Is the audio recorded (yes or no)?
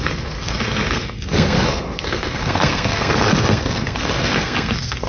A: no